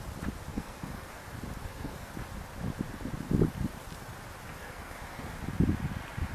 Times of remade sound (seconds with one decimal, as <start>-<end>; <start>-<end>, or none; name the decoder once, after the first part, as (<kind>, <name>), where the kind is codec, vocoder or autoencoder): 0.5-1.2 (codec, SNAC); 1.6-2.1; 4.6-5.4

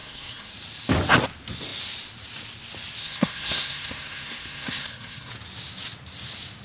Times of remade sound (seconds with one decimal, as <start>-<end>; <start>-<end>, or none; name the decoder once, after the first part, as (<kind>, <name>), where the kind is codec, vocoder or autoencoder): 0.0-0.5 (codec, SNAC); 3.0-5.3